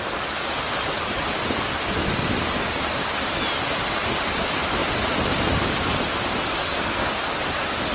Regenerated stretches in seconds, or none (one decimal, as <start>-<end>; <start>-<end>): 6.6-7.1